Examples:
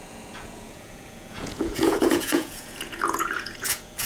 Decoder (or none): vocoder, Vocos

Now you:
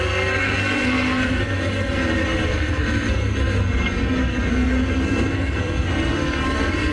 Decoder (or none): codec, SNAC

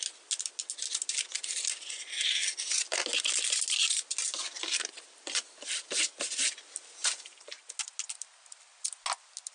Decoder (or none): none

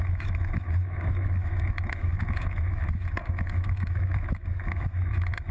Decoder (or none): autoencoder, DAC-VAE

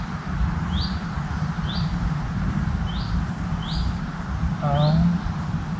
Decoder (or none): none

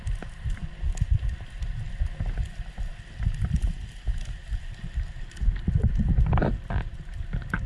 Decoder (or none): none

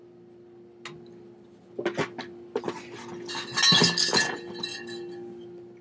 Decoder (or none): none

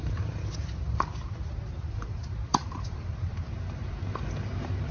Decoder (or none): vocoder, BigVGAN v2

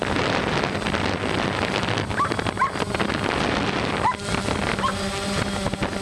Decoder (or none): none